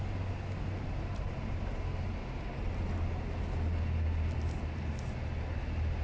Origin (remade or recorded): recorded